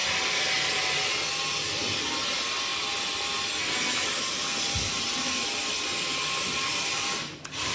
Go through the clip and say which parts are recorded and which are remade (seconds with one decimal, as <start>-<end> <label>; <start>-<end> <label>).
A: 0.0-7.7 recorded